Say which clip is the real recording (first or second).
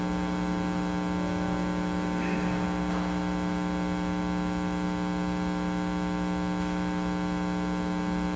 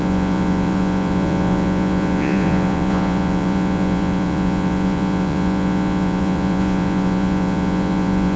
first